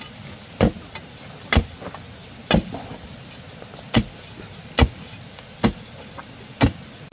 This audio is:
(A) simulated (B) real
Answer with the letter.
B